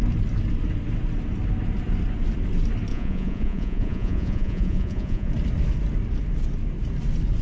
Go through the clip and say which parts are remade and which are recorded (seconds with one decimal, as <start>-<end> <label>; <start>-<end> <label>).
0.0-2.9 recorded; 2.9-5.3 remade; 5.3-7.4 recorded